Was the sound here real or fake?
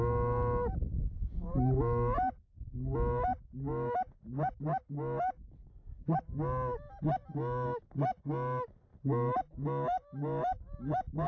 real